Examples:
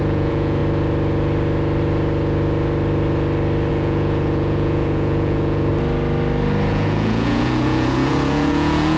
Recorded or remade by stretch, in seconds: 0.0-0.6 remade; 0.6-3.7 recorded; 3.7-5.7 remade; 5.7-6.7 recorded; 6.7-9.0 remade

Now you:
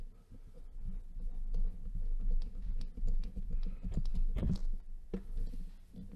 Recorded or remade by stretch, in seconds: 0.0-6.2 recorded

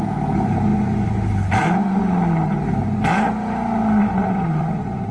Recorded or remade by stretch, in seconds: 0.0-4.0 recorded; 4.0-5.1 remade

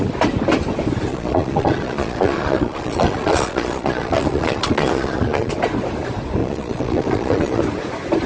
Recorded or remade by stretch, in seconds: 0.0-1.1 recorded; 1.1-5.5 remade; 5.5-6.4 recorded; 6.4-7.6 remade; 7.6-8.3 recorded